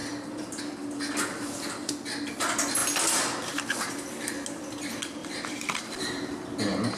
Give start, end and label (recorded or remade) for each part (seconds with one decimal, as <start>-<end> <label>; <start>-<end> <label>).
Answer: 0.0-0.6 remade; 0.6-5.2 recorded; 5.2-6.4 remade; 6.4-7.0 recorded